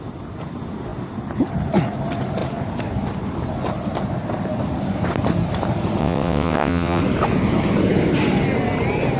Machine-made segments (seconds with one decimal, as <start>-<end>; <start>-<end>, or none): 6.0-7.0